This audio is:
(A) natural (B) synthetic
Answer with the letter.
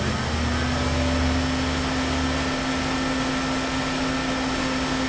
A